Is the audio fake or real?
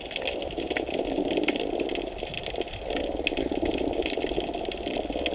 real